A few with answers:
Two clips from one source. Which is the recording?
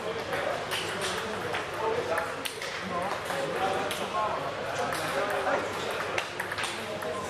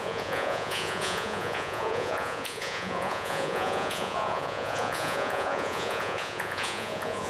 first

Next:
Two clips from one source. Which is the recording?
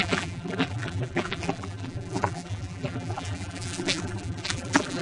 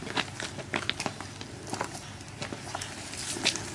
second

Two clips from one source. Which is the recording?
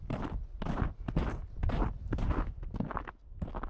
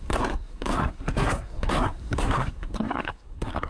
first